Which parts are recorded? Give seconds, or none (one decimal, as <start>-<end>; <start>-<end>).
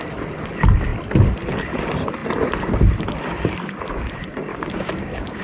0.0-4.5